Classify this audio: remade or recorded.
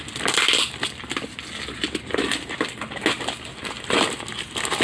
recorded